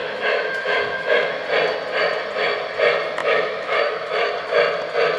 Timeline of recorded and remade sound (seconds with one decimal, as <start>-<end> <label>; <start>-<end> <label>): 0.0-1.4 remade; 1.4-3.2 recorded; 3.2-4.3 remade; 4.3-5.2 recorded